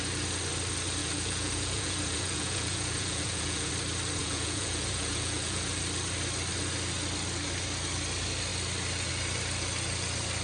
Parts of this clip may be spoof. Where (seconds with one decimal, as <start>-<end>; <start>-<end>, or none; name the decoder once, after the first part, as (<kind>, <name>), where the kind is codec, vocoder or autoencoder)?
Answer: 1.0-3.7 (vocoder, Vocos); 4.2-5.8

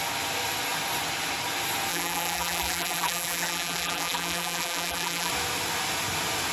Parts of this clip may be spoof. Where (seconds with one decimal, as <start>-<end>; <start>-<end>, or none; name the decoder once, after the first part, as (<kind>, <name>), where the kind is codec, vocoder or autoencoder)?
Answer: 1.9-5.3 (vocoder, BigVGAN v2)